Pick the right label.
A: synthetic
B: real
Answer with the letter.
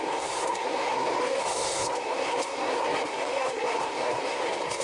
A